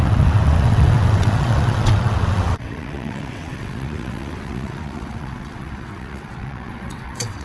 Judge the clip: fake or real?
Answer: fake